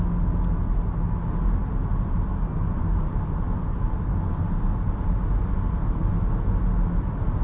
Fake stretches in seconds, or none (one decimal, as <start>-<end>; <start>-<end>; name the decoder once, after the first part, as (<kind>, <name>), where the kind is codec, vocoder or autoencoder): none